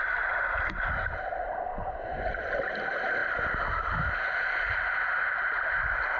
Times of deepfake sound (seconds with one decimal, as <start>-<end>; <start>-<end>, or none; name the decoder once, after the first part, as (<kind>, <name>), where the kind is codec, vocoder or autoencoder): 1.7-2.6 (vocoder, Vocos)